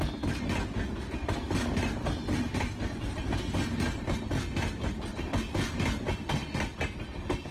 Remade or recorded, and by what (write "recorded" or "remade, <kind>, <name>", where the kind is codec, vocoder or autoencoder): recorded